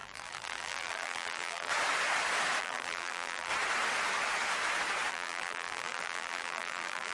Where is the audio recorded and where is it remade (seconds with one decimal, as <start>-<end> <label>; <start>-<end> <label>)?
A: 0.0-1.7 remade; 1.7-2.6 recorded; 2.6-3.5 remade; 3.5-5.1 recorded; 5.1-7.1 remade